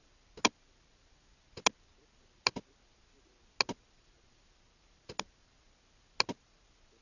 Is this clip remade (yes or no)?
no